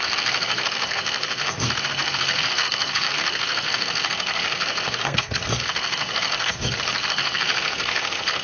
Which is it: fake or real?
fake